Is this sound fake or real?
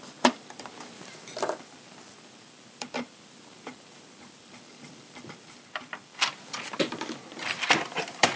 fake